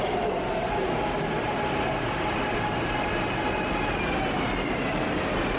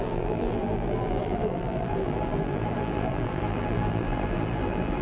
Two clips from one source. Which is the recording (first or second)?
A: first